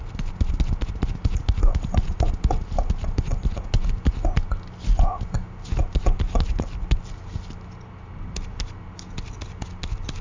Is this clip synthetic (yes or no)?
no